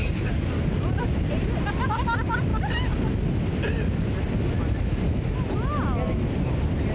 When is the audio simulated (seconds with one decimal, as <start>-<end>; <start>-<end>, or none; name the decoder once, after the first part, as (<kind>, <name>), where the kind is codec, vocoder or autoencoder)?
0.0-0.5 (codec, DAC)